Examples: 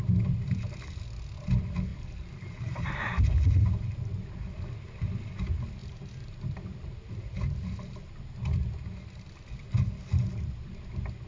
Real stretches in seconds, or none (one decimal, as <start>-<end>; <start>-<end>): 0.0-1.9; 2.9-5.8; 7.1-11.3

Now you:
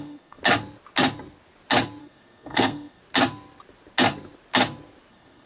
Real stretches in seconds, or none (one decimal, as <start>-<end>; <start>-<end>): 0.4-2.0; 3.0-5.1

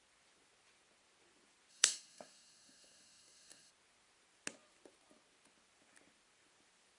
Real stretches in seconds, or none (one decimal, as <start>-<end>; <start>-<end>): 0.0-1.7; 3.7-7.0

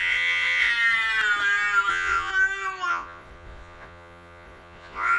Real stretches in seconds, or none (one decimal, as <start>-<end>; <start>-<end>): 0.7-1.9; 2.3-2.9

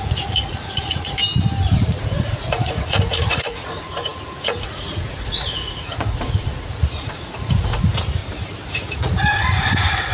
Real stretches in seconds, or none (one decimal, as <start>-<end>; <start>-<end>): 1.2-1.8; 8.2-8.7

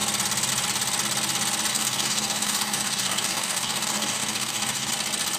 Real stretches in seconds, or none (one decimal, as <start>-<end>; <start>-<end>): 0.0-1.7; 4.9-5.4